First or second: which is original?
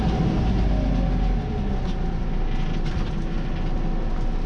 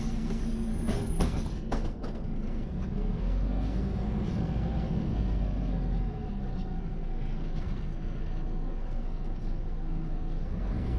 first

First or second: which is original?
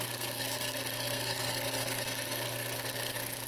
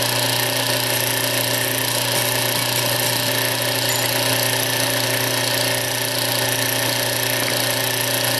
second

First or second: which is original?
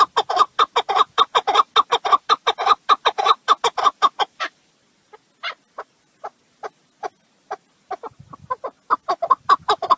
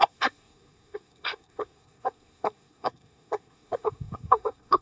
first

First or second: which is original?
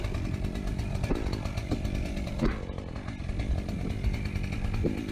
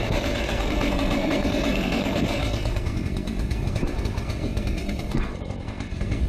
first